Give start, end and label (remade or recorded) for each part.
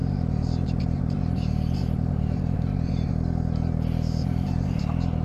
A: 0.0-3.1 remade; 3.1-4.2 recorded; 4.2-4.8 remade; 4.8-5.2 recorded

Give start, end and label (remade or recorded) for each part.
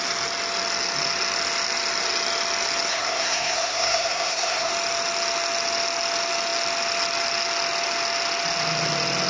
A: 0.0-2.9 recorded; 2.9-4.7 remade; 4.7-9.3 recorded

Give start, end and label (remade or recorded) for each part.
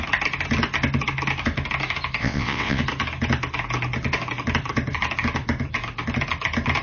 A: 0.0-2.2 recorded; 2.2-2.8 remade; 2.8-6.8 recorded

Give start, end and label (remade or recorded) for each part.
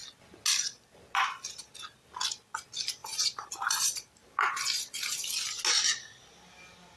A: 0.0-3.0 recorded; 3.0-5.6 remade; 5.6-7.0 recorded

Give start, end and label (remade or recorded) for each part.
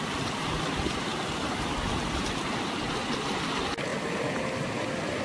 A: 0.0-5.2 recorded